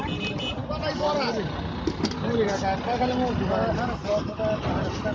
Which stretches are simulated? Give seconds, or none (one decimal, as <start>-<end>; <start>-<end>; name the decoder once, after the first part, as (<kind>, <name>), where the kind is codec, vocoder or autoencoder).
none

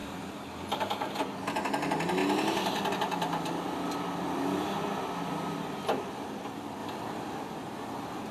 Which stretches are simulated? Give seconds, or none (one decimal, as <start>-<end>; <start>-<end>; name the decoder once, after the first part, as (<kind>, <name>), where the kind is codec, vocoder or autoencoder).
0.0-0.7 (vocoder, BigVGAN v2)

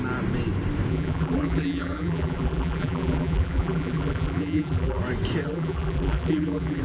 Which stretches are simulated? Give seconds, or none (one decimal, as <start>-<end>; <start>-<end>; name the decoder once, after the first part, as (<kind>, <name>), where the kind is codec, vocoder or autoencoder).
0.9-5.0 (vocoder, BigVGAN v2); 5.4-6.8